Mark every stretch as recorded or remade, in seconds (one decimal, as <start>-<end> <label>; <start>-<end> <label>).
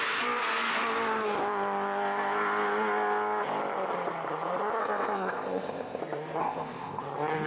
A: 0.0-4.8 recorded; 4.8-6.0 remade; 6.0-6.4 recorded; 6.4-7.0 remade; 7.0-7.5 recorded